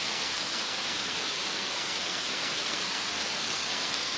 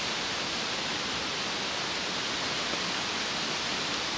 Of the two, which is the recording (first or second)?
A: second